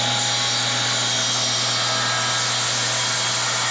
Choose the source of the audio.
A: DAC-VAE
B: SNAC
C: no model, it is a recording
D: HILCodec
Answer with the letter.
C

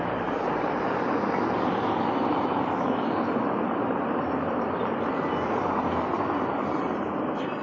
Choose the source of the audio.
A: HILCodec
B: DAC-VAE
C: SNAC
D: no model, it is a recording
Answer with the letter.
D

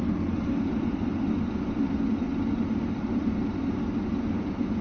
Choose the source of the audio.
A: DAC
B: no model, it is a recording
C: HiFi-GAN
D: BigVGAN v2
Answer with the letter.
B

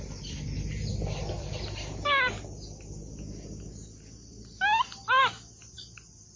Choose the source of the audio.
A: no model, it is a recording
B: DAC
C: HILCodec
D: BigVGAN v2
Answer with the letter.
A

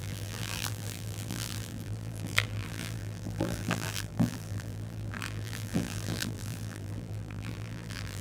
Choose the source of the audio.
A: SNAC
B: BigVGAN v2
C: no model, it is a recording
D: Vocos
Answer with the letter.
B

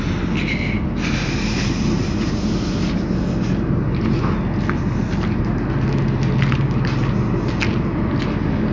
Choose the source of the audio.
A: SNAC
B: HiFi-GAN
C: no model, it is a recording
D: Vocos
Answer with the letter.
C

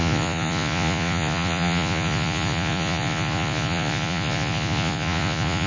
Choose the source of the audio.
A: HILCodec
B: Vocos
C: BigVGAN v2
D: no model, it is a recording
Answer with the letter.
B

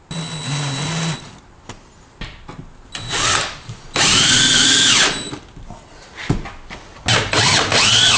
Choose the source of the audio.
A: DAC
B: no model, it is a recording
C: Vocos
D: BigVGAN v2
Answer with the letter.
B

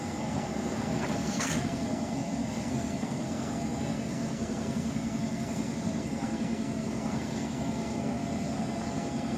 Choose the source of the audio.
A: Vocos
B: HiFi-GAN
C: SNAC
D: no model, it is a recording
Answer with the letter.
C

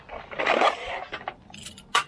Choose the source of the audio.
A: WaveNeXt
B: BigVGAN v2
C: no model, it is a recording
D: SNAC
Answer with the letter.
C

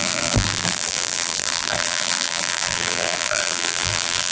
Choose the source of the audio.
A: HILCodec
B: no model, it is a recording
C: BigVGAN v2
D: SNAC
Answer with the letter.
C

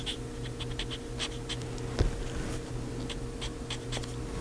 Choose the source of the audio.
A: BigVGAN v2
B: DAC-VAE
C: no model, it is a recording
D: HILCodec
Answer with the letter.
C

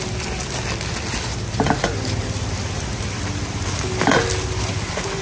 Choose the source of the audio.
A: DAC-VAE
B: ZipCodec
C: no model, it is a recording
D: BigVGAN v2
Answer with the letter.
C